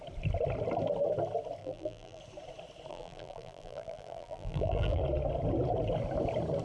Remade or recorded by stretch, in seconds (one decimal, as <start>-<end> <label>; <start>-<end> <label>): 0.0-1.6 recorded; 1.6-2.2 remade; 2.2-2.9 recorded; 2.9-5.0 remade; 5.0-6.6 recorded